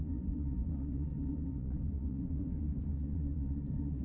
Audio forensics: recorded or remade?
remade